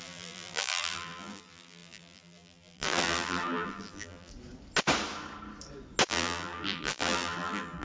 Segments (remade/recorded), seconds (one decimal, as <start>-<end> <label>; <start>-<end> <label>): 0.0-4.3 remade; 4.3-6.1 recorded; 6.1-7.8 remade